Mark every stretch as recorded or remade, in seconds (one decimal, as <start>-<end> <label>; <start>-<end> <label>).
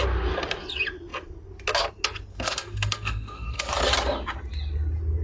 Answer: 0.0-2.3 recorded; 2.3-3.7 remade; 3.7-5.2 recorded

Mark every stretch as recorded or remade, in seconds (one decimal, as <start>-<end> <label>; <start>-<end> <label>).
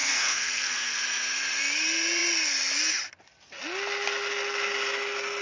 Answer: 0.0-1.0 remade; 1.0-5.4 recorded